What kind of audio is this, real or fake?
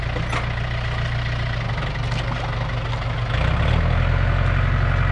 real